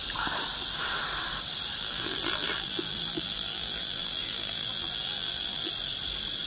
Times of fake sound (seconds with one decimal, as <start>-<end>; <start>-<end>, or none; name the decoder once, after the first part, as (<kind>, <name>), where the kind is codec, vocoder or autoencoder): 1.8-5.7 (vocoder, BigVGAN v2)